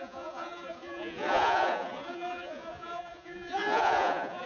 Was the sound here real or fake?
fake